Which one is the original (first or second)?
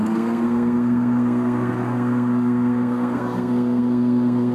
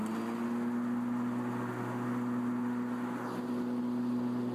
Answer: second